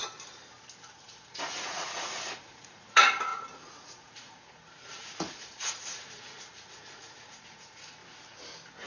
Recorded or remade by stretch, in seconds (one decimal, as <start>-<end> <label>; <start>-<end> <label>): 0.0-1.0 recorded; 1.0-8.0 remade; 8.0-8.9 recorded